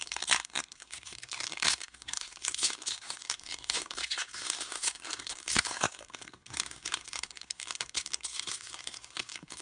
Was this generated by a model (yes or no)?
yes